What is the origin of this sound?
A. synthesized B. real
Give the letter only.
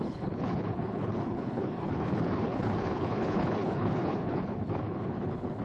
A